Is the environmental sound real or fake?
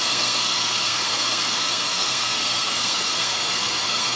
fake